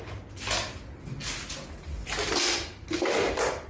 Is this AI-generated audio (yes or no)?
no